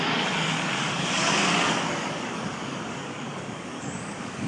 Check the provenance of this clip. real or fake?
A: fake